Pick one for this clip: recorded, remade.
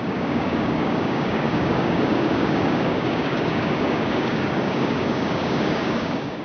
remade